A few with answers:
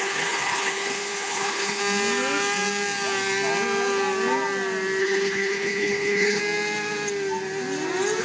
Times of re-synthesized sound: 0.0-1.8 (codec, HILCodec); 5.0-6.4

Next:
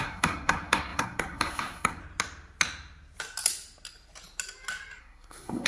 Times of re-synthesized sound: 0.0-2.0 (codec, SNAC); 5.0-5.7

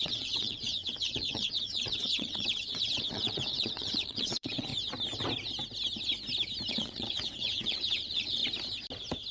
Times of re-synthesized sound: 0.0-4.7 (vocoder, WaveNeXt); 6.7-8.4